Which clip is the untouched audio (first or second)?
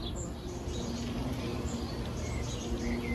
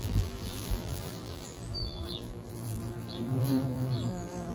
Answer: first